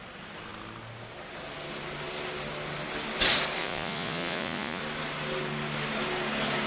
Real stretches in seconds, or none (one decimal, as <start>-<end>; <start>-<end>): 0.0-3.6; 4.8-6.7